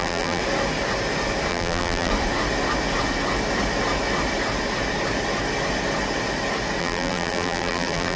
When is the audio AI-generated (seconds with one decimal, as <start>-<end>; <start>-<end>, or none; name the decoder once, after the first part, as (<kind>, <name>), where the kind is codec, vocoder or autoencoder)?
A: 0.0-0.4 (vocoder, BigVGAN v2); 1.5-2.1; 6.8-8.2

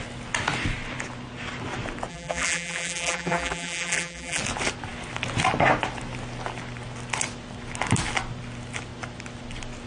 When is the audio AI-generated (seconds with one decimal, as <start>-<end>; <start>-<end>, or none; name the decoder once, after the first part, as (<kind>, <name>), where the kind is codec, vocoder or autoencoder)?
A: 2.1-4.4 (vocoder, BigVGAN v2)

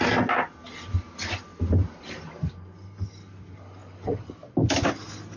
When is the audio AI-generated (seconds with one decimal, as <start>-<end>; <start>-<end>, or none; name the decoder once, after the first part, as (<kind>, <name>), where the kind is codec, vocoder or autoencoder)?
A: none